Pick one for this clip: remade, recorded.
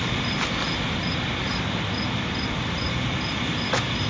recorded